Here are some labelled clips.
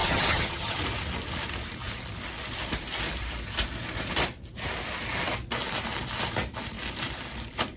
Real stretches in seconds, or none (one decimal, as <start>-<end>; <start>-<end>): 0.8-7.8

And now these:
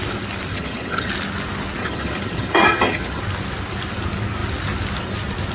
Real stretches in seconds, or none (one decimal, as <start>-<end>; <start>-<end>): 0.0-0.5; 1.1-1.8; 3.2-5.5

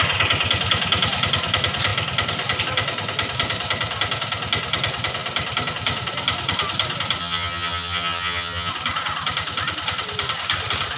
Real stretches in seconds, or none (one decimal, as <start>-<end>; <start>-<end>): 0.0-7.2; 8.7-11.0

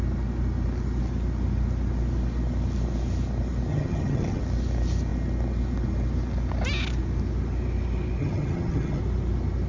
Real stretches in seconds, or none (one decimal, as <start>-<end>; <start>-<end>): 0.0-3.7; 4.4-8.2; 9.0-9.7

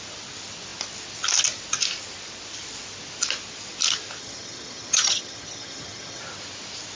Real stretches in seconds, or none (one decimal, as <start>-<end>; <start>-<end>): 0.0-4.2; 6.2-6.9